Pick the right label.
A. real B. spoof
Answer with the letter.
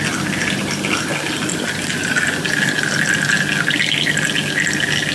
A